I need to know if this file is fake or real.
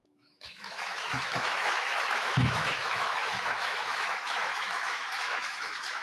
fake